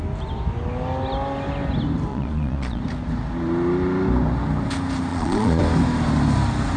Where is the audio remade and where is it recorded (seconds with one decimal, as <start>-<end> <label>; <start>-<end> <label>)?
0.0-2.1 recorded; 2.1-2.8 remade; 2.8-5.1 recorded; 5.1-5.6 remade; 5.6-6.8 recorded